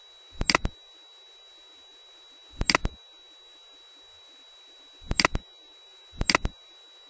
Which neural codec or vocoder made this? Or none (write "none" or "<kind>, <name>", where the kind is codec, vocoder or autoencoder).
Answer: none